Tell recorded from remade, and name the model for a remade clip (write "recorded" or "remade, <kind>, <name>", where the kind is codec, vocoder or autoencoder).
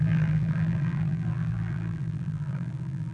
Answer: remade, vocoder, BigVGAN v2